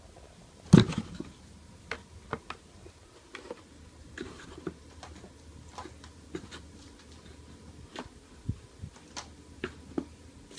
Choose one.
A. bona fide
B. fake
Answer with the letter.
A